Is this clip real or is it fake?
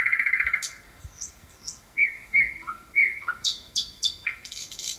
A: fake